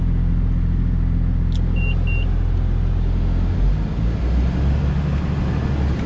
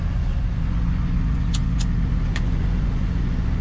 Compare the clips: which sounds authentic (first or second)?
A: first